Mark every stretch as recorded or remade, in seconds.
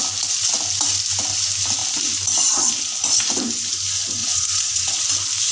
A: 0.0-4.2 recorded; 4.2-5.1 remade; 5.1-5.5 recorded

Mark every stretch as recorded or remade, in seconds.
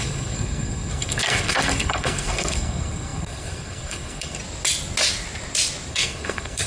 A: 0.0-4.4 remade; 4.4-5.9 recorded; 5.9-6.7 remade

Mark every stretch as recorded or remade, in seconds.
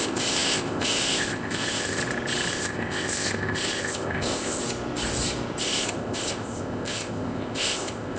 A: 0.0-2.0 remade; 2.0-2.5 recorded; 2.5-4.6 remade; 4.6-5.6 recorded; 5.6-8.2 remade